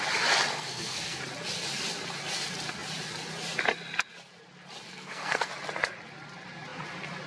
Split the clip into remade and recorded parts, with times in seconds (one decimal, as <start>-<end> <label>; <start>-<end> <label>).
0.0-0.5 recorded; 0.5-1.2 remade; 1.2-4.9 recorded; 4.9-5.5 remade; 5.5-7.3 recorded